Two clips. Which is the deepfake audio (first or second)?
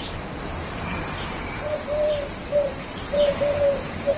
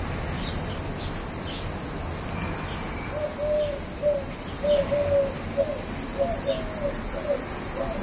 first